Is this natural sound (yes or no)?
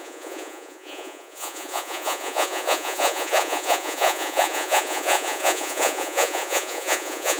no